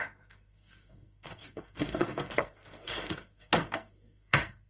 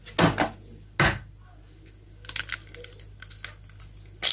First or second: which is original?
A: second